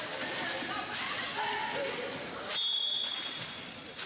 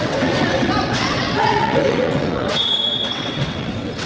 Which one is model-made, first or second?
second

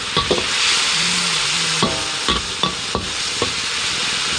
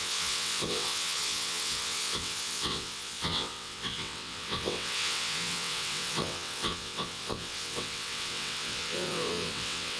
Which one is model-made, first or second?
second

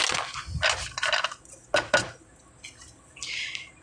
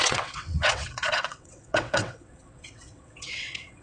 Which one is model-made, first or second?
second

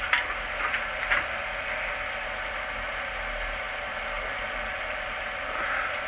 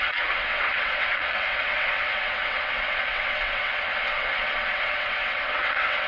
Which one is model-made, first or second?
second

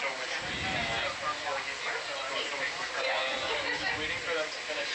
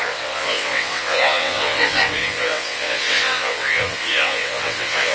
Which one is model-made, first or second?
second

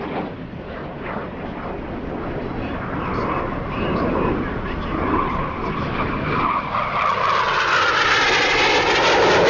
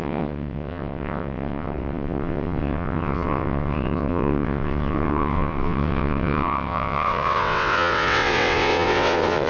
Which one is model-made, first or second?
second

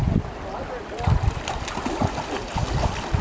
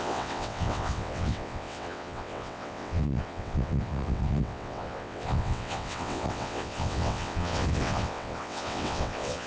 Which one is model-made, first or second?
second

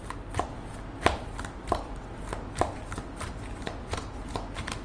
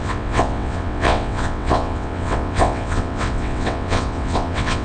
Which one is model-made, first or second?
second